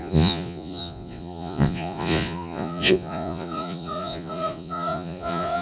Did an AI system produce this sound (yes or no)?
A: yes